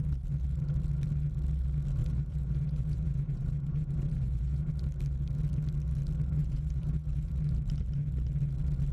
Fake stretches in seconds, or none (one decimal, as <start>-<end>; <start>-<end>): 2.0-4.7; 6.4-7.3